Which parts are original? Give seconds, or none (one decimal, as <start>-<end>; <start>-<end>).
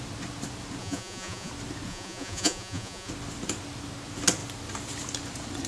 0.0-0.8; 1.5-1.9; 3.1-5.7